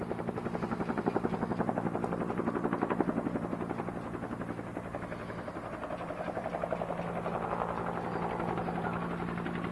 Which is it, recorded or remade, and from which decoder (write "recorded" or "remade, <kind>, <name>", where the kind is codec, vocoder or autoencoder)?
recorded